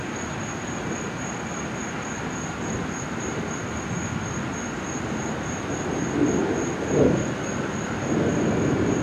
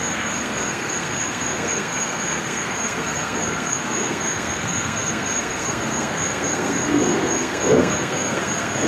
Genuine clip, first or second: first